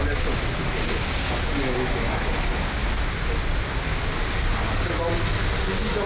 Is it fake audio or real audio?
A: real